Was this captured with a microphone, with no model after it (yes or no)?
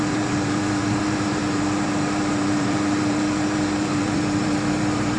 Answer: no